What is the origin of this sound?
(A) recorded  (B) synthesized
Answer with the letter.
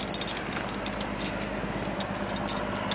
A